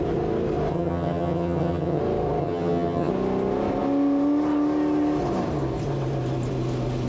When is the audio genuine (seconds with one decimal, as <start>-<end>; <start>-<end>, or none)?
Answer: 0.0-0.7; 2.0-2.4; 3.1-7.1